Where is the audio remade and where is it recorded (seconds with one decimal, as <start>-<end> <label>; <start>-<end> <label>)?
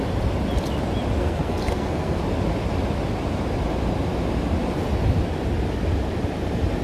0.0-1.2 recorded; 1.2-2.2 remade; 2.2-6.8 recorded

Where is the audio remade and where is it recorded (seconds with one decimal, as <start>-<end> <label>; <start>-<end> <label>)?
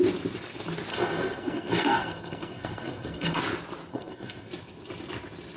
0.0-0.9 recorded; 0.9-3.4 remade; 3.4-3.9 recorded; 3.9-4.5 remade; 4.5-5.6 recorded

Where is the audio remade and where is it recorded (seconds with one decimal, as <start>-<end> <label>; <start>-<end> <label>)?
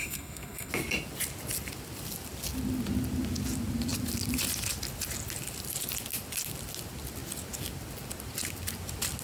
0.0-0.7 remade; 0.7-9.2 recorded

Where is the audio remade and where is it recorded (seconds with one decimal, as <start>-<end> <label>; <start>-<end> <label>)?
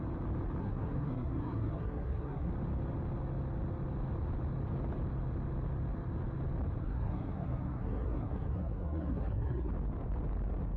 0.0-0.6 recorded; 0.6-2.5 remade; 2.5-6.8 recorded; 6.8-9.7 remade; 9.7-10.8 recorded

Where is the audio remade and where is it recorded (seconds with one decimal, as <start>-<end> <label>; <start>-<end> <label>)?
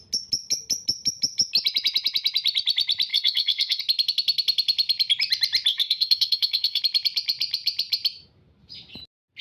0.0-3.1 recorded; 3.1-3.8 remade; 3.8-5.7 recorded; 5.7-6.8 remade; 6.8-9.4 recorded